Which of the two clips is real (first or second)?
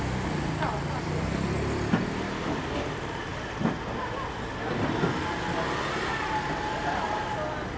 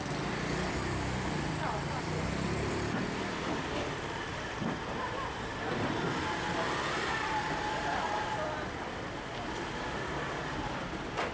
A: first